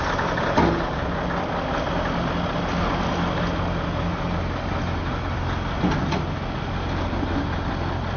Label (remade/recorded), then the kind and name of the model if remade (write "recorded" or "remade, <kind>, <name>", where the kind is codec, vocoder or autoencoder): recorded